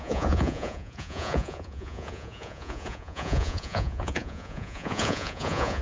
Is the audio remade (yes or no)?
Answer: yes